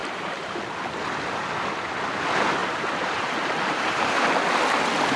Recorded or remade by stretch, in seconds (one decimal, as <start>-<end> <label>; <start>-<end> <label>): 0.0-0.6 remade; 0.6-2.6 recorded; 2.6-4.1 remade; 4.1-5.2 recorded